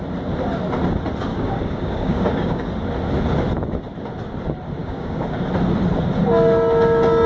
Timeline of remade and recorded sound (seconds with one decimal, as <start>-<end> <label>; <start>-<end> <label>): 0.0-1.3 recorded; 1.3-2.7 remade; 2.7-4.8 recorded; 4.8-5.5 remade; 5.5-7.3 recorded